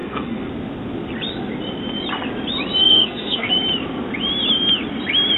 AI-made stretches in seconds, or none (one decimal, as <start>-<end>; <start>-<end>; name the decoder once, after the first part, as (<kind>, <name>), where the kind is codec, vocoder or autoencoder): 0.0-0.5 (codec, SNAC); 2.8-3.5